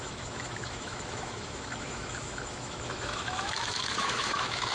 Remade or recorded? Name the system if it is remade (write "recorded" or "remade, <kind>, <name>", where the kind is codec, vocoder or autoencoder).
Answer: remade, autoencoder, DAC-VAE